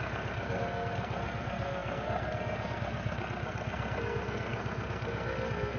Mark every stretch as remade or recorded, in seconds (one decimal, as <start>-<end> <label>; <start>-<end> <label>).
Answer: 0.0-5.8 remade